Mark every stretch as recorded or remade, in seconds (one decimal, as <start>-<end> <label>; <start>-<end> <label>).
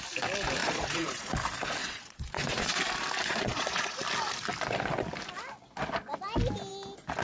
0.0-0.6 recorded; 0.6-1.3 remade; 1.3-1.8 recorded; 1.8-2.8 remade; 2.8-3.3 recorded; 3.3-4.0 remade; 4.0-7.2 recorded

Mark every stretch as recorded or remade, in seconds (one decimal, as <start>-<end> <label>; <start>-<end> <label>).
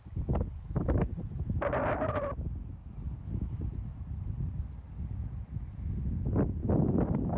0.0-7.4 recorded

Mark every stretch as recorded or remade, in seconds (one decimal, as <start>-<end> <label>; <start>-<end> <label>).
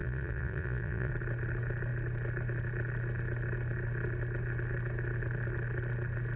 0.0-1.1 remade; 1.1-6.4 recorded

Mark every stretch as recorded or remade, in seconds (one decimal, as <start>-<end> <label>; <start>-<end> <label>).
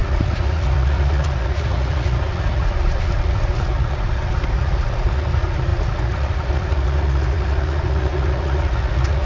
0.0-9.3 remade